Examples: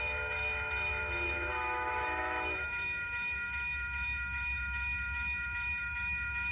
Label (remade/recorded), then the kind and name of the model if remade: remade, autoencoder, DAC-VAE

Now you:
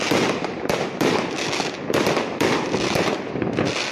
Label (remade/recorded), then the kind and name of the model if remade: recorded